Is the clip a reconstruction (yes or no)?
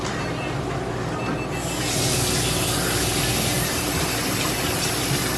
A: no